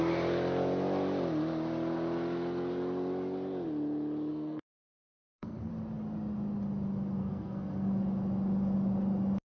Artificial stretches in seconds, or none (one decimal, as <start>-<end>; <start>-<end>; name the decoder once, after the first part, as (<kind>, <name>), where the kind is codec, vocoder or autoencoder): 4.3-5.7 (codec, SNAC); 7.2-7.9